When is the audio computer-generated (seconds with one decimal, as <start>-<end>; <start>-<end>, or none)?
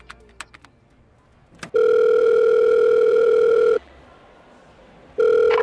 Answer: 2.2-3.9